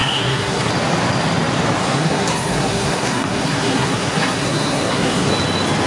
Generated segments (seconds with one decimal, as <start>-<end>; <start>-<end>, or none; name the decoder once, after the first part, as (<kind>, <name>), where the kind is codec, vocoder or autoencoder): 0.0-0.7 (codec, SNAC); 1.8-5.3